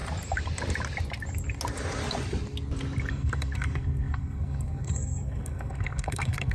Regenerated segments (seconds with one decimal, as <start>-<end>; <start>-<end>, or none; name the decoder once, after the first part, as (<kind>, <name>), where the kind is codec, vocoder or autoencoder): 3.1-6.5 (codec, SNAC)